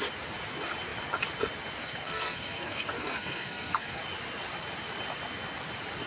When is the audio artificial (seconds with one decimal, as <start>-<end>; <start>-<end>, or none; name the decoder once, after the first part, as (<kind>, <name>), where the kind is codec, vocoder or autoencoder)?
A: 1.8-4.0 (codec, SNAC)